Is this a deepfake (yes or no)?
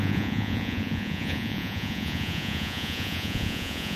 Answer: yes